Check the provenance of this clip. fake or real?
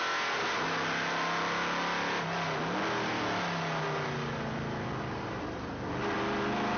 real